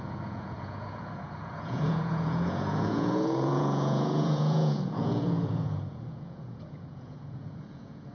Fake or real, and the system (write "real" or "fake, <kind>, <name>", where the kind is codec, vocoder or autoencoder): fake, vocoder, Vocos